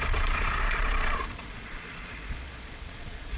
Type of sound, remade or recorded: remade